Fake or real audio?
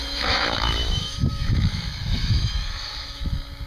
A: fake